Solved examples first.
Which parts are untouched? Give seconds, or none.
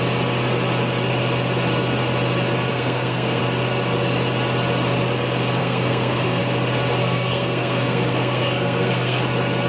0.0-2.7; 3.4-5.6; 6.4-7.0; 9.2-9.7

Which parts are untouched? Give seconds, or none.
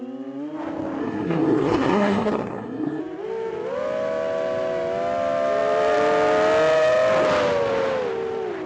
0.0-1.0; 3.0-8.7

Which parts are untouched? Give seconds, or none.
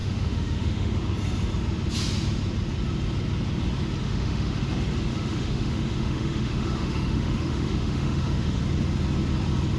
1.0-4.0; 4.6-5.1; 8.6-9.8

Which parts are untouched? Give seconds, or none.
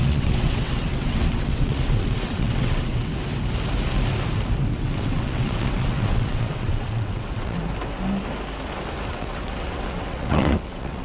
3.1-4.8; 7.6-9.1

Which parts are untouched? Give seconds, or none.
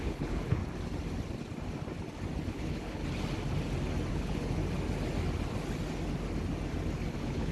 0.6-2.4; 3.0-4.1; 4.6-7.1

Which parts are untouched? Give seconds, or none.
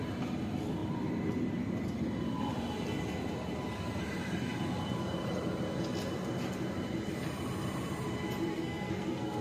0.0-8.5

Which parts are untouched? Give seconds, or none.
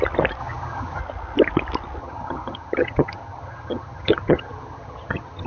0.0-0.4; 1.0-2.0